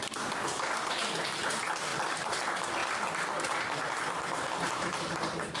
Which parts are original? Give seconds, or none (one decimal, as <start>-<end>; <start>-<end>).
0.0-1.9; 2.4-2.8; 5.1-5.6